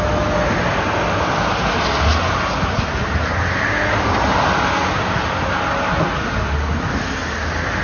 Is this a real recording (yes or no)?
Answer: yes